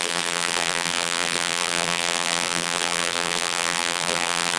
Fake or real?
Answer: fake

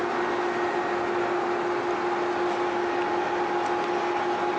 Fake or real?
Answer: real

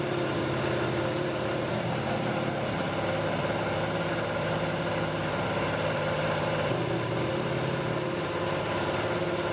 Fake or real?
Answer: fake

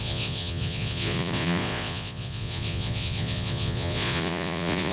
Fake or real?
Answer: fake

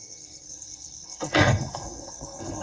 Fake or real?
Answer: fake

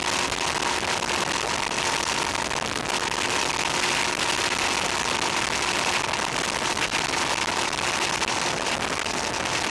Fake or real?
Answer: real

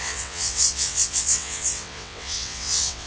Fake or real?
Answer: fake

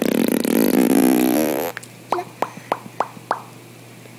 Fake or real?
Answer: real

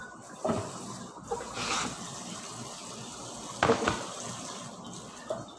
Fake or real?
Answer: real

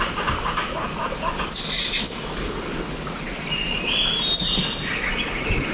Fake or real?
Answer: real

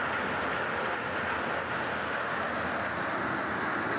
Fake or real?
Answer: real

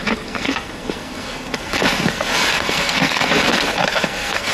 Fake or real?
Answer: fake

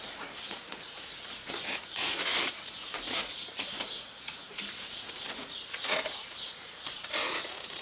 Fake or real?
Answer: fake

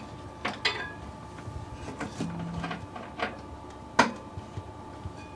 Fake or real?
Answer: real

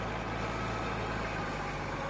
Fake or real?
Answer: real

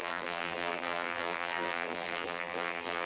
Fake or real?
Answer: fake